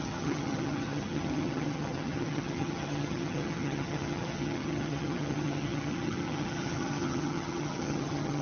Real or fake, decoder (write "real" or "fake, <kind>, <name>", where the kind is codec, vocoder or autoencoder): fake, vocoder, HiFi-GAN